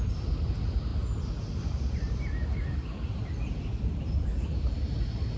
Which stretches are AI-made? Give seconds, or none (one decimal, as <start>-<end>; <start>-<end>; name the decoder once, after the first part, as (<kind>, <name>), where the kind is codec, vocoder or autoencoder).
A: none